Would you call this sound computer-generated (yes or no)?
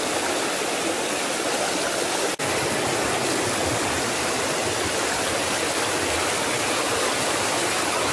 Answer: no